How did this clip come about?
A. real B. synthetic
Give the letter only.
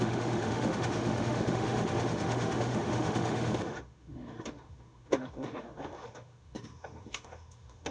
B